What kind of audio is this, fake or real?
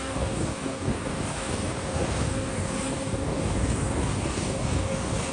fake